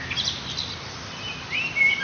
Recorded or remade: recorded